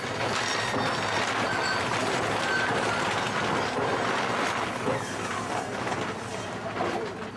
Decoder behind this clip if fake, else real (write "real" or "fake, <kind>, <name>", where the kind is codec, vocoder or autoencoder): real